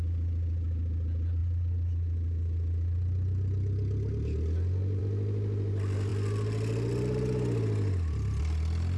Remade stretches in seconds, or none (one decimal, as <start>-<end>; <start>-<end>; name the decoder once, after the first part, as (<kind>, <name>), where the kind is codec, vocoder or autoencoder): none